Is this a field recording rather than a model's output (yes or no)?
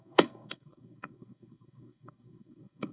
no